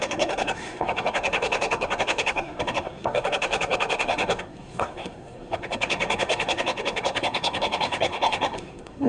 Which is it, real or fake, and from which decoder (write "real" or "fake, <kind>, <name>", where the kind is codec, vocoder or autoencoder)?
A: fake, codec, SNAC